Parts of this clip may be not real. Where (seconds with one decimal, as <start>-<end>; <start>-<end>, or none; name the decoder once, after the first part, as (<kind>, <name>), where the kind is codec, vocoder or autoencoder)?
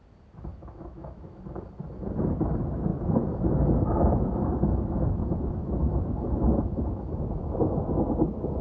0.5-1.4 (autoencoder, DAC-VAE); 2.9-7.6